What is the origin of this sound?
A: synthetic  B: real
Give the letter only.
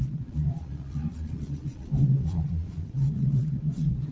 A